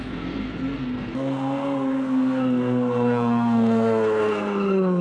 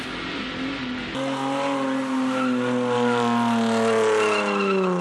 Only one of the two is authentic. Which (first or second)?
second